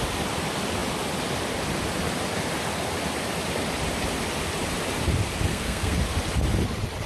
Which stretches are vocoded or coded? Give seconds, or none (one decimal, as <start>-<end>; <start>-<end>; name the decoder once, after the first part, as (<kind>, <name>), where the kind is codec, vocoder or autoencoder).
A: 5.5-6.0 (codec, SNAC)

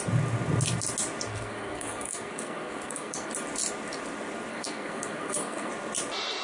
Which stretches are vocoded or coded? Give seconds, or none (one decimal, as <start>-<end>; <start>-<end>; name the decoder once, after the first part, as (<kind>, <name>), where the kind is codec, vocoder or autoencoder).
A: 1.3-3.3 (codec, SNAC); 4.5-5.7

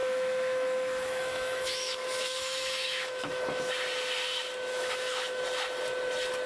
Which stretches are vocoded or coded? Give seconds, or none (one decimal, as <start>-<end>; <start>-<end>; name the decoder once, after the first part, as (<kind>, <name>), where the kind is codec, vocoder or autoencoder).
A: 0.0-3.7 (autoencoder, DAC-VAE); 4.7-5.4

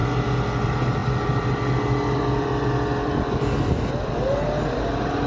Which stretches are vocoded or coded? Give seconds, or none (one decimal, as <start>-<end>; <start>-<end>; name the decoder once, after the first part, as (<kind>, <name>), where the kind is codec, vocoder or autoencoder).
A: none

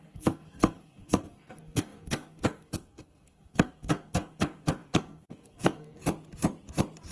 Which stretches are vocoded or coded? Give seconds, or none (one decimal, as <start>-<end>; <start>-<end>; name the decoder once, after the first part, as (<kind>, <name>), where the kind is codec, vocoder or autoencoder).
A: 0.0-6.0 (codec, SNAC)

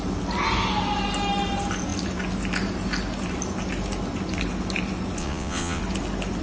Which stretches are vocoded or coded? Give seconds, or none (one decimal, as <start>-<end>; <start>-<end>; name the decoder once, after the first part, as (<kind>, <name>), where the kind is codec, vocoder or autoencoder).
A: 5.2-5.8 (vocoder, WaveNeXt)

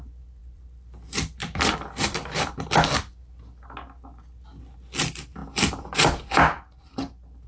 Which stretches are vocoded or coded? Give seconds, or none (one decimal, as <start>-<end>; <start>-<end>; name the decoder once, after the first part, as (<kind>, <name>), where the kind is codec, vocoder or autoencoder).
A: 0.4-1.7 (vocoder, BigVGAN v2)